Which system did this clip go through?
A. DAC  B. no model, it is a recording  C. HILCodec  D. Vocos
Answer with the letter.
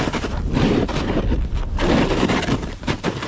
B